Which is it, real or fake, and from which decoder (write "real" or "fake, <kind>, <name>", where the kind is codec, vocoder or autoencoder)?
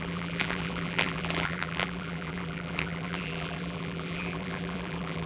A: fake, vocoder, BigVGAN v2